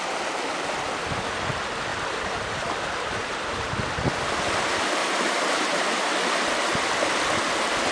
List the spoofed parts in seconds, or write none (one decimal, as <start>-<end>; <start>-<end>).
1.9-3.7; 5.0-6.2

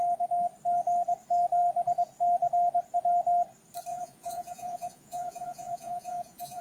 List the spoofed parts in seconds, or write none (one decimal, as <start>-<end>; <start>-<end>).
3.9-6.6

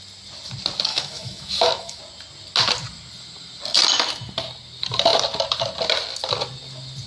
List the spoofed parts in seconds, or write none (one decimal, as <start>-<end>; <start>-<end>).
0.9-2.0

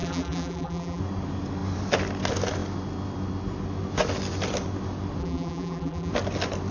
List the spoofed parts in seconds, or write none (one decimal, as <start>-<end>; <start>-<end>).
0.0-1.0; 5.2-6.1

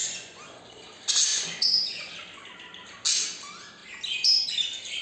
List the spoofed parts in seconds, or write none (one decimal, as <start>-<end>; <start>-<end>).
0.0-0.6; 1.3-2.1

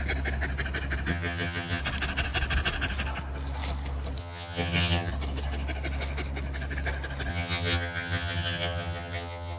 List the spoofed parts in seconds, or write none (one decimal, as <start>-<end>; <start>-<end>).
1.1-1.8; 4.2-5.1; 7.3-9.6

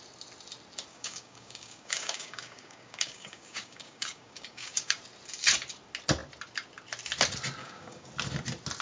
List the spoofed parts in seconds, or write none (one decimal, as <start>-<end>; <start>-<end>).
0.9-5.0; 7.6-8.1